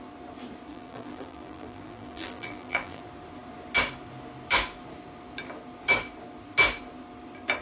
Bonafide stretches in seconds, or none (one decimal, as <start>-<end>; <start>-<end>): 0.0-0.7; 3.0-7.6